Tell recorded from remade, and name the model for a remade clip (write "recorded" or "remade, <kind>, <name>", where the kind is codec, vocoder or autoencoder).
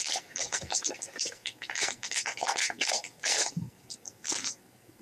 remade, codec, SNAC